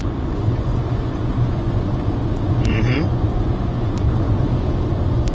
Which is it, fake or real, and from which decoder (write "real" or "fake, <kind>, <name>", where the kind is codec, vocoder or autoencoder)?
fake, vocoder, Vocos